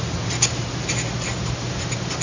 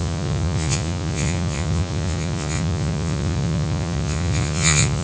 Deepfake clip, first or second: second